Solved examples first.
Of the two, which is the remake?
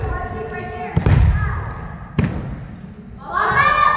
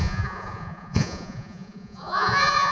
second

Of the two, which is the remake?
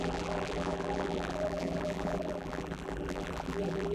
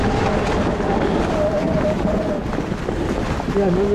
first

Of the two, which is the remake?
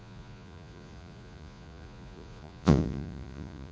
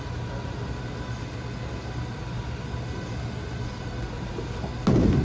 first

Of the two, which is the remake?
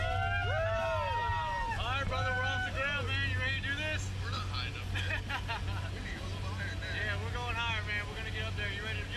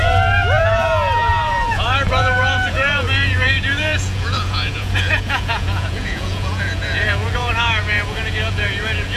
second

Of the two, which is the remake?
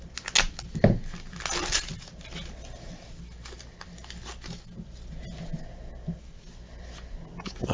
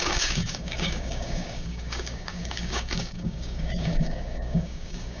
second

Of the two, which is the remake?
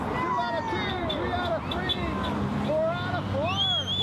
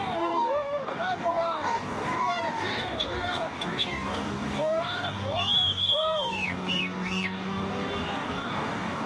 second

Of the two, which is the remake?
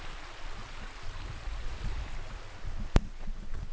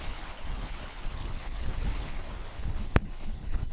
second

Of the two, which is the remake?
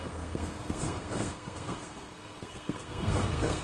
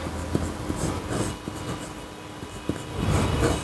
first